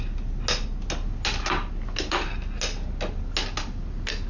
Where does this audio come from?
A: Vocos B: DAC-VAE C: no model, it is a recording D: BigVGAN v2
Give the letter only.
C